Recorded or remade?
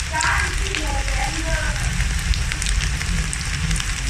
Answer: recorded